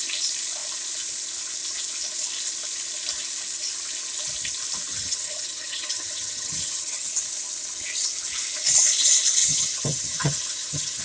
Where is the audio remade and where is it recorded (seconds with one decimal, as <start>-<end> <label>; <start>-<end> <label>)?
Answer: 0.0-4.9 recorded; 4.9-7.1 remade; 7.1-9.4 recorded; 9.4-11.0 remade